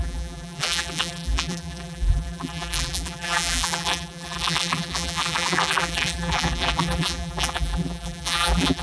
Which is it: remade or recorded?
remade